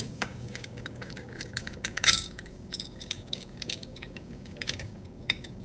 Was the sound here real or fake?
fake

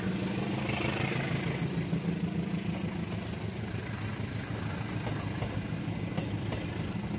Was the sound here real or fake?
real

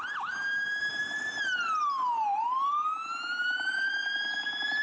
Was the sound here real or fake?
real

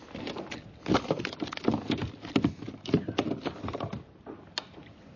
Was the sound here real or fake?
real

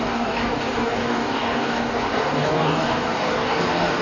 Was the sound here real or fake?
fake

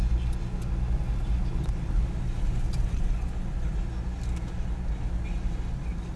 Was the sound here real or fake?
real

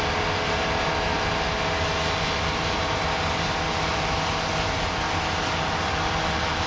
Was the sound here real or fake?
real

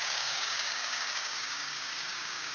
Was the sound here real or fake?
fake